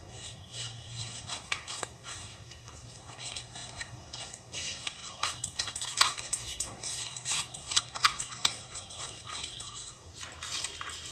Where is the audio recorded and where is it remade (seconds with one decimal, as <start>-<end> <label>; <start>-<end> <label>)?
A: 0.0-10.1 remade; 10.1-11.1 recorded